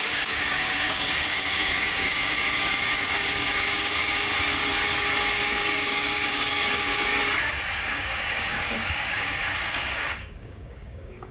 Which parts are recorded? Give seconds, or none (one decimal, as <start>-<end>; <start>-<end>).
4.3-5.4; 7.1-7.8